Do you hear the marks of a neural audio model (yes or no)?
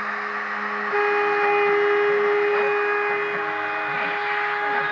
no